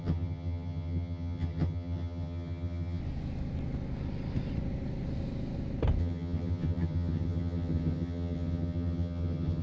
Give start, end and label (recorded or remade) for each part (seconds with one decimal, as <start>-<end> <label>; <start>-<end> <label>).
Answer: 0.0-3.0 remade; 3.0-6.0 recorded; 6.0-9.6 remade